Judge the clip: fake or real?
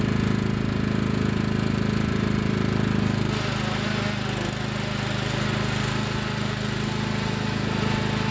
real